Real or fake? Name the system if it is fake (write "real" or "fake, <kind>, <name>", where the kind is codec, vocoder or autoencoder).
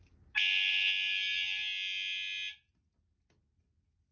real